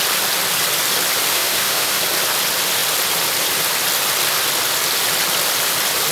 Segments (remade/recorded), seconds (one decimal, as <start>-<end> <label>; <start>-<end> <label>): 0.0-1.3 recorded; 1.3-2.0 remade; 2.0-6.1 recorded

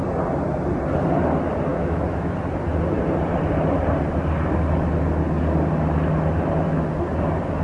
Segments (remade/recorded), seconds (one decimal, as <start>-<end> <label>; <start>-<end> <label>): 0.0-1.7 recorded; 1.7-2.3 remade; 2.3-7.6 recorded